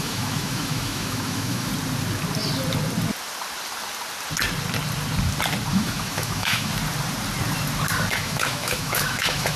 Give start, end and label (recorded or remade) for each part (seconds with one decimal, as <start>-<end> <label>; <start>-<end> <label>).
0.0-1.7 remade; 1.7-5.7 recorded; 5.7-6.7 remade; 6.7-8.1 recorded; 8.1-9.6 remade